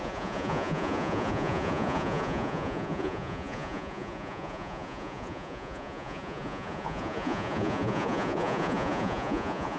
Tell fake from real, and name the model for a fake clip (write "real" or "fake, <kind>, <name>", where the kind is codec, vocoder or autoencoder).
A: fake, vocoder, Vocos